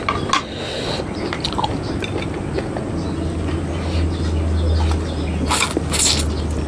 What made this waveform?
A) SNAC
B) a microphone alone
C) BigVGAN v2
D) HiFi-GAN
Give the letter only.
B